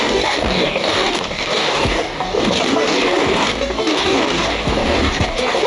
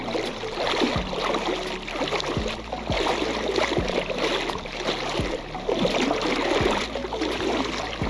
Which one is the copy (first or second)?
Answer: first